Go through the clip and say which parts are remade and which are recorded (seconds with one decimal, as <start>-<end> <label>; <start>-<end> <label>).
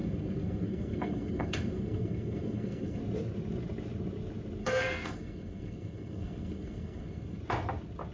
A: 0.0-3.0 remade; 3.0-4.6 recorded; 4.6-7.4 remade; 7.4-8.1 recorded